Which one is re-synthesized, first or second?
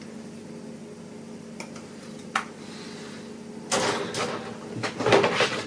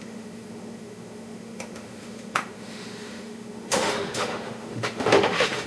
second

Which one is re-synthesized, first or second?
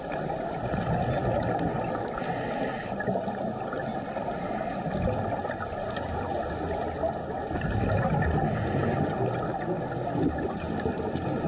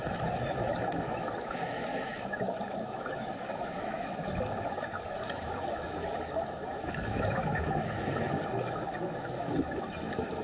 second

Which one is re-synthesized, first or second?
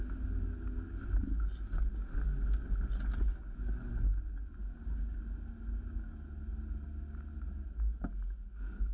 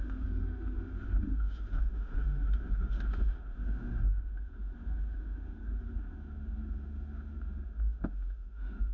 second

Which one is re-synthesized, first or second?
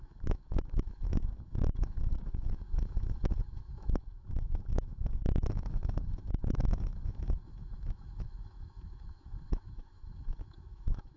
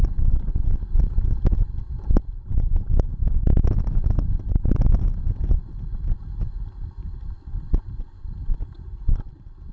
first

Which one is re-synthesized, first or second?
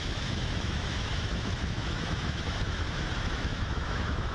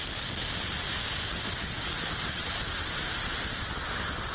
first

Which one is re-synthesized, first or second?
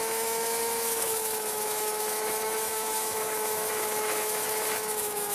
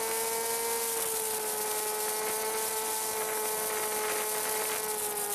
first